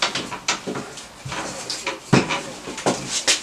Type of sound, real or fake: real